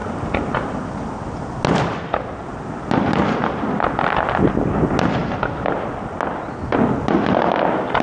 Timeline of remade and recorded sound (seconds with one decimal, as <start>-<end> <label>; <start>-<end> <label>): 0.0-8.0 recorded